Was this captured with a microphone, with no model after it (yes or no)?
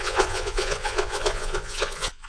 no